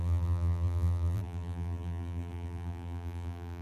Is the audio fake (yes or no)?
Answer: yes